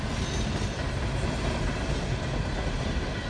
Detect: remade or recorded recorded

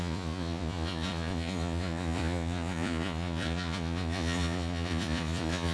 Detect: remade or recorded remade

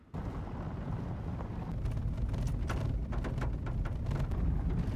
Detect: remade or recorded recorded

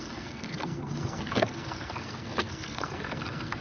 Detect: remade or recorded remade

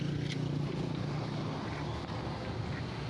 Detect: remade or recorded recorded